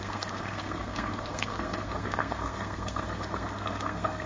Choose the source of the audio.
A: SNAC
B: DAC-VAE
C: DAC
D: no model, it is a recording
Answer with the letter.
A